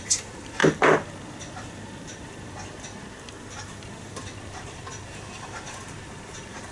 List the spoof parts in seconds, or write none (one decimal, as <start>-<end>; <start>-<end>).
0.0-0.6; 4.4-6.7